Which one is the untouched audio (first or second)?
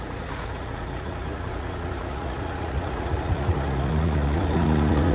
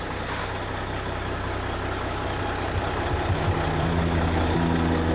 second